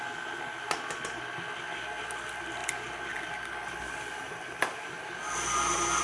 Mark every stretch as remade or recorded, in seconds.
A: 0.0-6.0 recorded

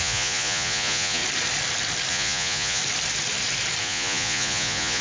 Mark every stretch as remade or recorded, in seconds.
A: 0.0-1.2 remade; 1.2-2.1 recorded; 2.1-2.8 remade; 2.8-3.8 recorded; 3.8-5.0 remade

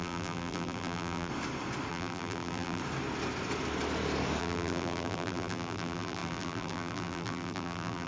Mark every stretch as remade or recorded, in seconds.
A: 0.0-1.3 remade; 1.3-1.9 recorded; 1.9-2.8 remade; 2.8-4.4 recorded; 4.4-8.1 remade

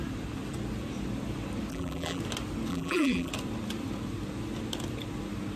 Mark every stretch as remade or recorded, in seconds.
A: 0.0-1.7 recorded; 1.7-2.2 remade; 2.2-2.7 recorded; 2.7-3.3 remade; 3.3-5.6 recorded

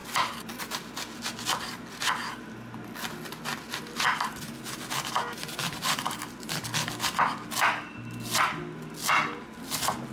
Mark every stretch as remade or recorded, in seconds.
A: 0.0-10.1 recorded

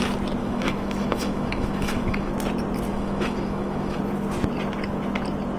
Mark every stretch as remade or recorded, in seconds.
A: 0.0-0.4 recorded; 0.4-2.3 remade; 2.3-2.9 recorded; 2.9-4.0 remade; 4.0-5.6 recorded

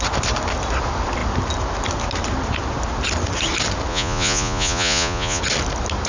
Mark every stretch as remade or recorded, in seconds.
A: 0.0-3.9 recorded; 3.9-5.4 remade; 5.4-6.1 recorded